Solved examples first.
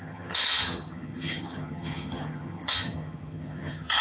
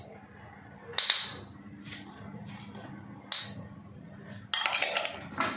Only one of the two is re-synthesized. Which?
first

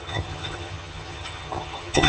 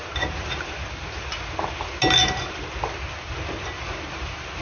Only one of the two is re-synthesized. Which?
first